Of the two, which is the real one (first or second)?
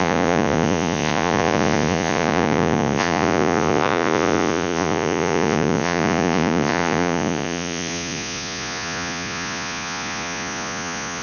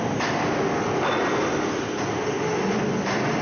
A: second